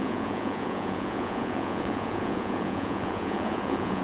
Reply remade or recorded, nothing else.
remade